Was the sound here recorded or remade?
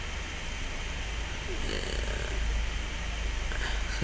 recorded